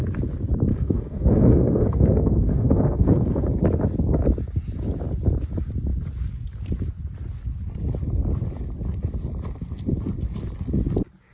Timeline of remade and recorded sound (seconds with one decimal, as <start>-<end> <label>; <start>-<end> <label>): 0.0-0.7 recorded; 0.7-3.5 remade; 3.5-11.3 recorded